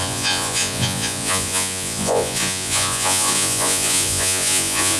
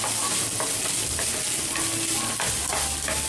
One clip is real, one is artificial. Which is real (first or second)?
second